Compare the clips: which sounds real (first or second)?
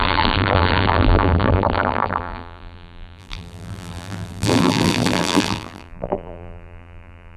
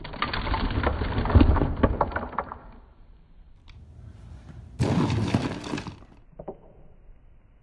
second